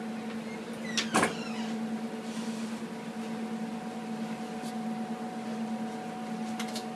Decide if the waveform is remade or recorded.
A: recorded